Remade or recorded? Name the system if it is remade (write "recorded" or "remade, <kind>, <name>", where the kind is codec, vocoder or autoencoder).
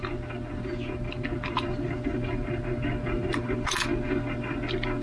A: recorded